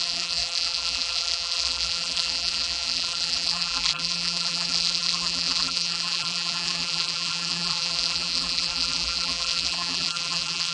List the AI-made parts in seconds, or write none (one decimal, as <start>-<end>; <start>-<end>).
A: 0.0-10.7